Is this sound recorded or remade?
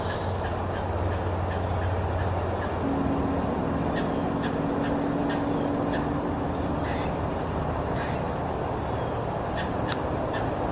recorded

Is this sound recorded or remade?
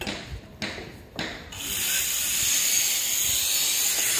recorded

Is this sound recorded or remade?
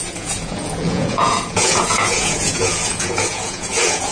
remade